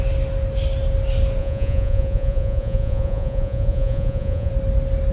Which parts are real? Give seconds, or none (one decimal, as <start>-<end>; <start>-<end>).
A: 0.0-1.4; 4.5-5.1